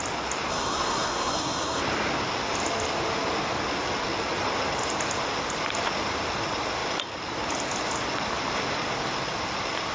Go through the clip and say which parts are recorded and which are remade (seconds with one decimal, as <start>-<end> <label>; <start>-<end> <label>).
0.0-0.5 recorded; 0.5-1.8 remade; 1.8-9.9 recorded